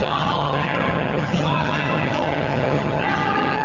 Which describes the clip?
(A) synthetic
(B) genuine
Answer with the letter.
A